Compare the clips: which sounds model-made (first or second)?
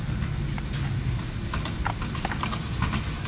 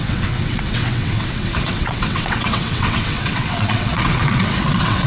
second